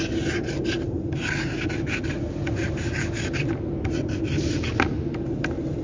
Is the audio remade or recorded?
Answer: recorded